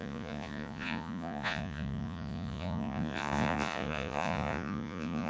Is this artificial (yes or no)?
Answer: yes